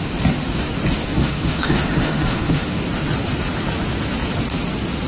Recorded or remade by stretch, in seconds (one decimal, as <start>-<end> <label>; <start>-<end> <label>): 0.0-1.0 recorded; 1.0-2.8 remade; 2.8-5.1 recorded